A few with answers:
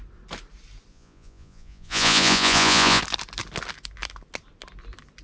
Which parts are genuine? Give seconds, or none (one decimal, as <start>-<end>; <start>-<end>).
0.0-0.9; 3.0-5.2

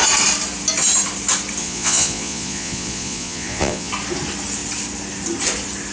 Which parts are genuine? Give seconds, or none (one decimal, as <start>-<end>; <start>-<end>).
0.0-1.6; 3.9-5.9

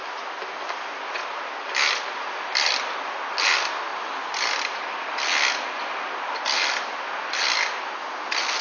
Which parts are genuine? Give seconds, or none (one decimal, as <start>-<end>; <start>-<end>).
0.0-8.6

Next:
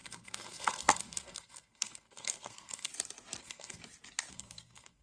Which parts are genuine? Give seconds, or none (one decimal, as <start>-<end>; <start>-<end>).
2.9-3.4; 3.8-4.3

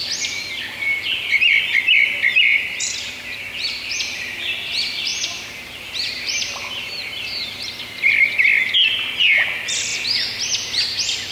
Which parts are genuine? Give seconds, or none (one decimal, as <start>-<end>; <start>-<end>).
0.0-2.5; 4.0-5.1; 7.7-11.3

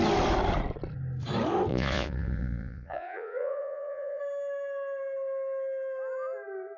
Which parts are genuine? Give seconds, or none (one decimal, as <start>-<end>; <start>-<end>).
0.0-1.7; 4.2-6.8

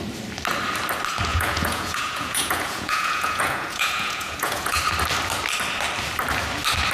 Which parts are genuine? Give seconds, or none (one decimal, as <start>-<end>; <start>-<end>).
0.0-1.3; 4.8-6.9

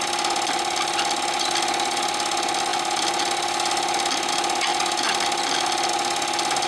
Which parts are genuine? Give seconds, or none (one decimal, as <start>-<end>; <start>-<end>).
0.0-6.7